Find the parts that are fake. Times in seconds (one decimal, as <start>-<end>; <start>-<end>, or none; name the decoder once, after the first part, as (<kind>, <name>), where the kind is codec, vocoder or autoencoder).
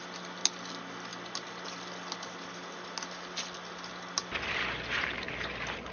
none